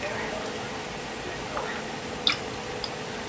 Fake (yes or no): no